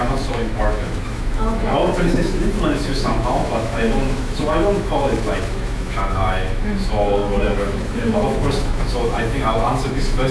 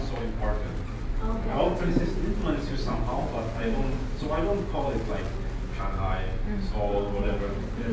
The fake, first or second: first